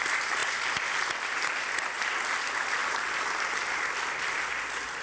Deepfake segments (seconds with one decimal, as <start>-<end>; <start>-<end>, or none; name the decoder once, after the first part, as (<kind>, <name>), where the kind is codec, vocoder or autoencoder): none

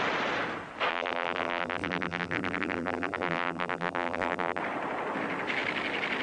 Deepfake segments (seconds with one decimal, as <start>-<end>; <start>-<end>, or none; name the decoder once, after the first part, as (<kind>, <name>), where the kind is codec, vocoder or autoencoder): 0.9-4.6 (vocoder, BigVGAN v2)

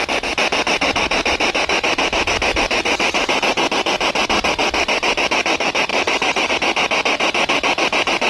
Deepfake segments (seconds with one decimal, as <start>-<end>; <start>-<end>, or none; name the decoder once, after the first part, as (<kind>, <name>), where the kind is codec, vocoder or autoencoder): 1.0-3.4 (vocoder, BigVGAN v2); 5.9-6.5

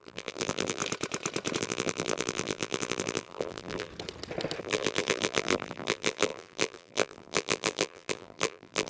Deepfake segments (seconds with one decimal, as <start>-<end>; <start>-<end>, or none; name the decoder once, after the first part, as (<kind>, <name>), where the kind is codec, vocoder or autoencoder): 0.0-0.8 (vocoder, BigVGAN v2); 1.6-3.9; 4.6-8.9

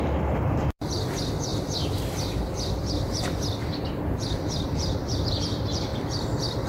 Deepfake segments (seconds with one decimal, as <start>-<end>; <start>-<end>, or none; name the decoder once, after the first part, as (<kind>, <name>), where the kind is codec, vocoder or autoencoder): 0.0-5.9 (vocoder, BigVGAN v2)

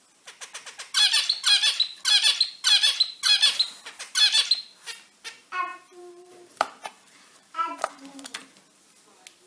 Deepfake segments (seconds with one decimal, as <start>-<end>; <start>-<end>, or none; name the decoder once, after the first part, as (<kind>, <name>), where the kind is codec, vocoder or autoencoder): 5.7-8.4 (vocoder, BigVGAN v2)

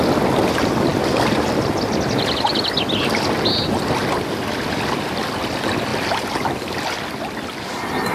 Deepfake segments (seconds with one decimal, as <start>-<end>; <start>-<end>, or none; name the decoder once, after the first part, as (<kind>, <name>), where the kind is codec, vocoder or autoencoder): none